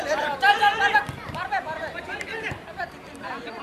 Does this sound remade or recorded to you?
remade